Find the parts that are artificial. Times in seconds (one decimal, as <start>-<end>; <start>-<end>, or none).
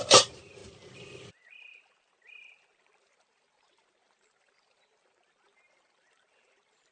0.0-0.6; 1.3-6.9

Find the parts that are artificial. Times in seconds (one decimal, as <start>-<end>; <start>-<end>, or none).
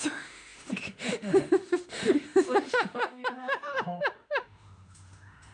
0.0-5.5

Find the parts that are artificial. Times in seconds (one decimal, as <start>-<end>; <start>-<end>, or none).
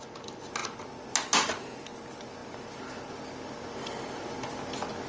none